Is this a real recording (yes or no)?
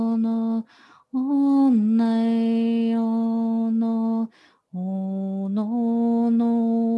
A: yes